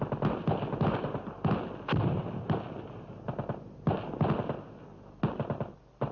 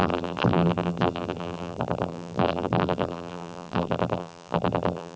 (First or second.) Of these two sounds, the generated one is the second